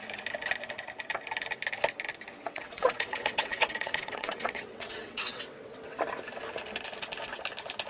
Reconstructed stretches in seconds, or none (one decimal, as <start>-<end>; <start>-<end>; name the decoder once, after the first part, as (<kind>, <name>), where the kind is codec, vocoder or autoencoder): 2.4-6.0 (vocoder, WaveNeXt)